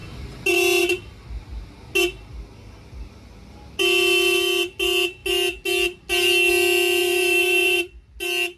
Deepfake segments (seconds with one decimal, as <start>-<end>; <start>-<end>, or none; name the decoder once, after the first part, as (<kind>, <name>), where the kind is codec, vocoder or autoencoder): 7.0-8.2 (vocoder, BigVGAN v2)